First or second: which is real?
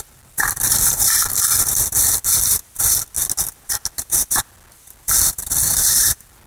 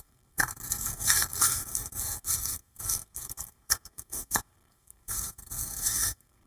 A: first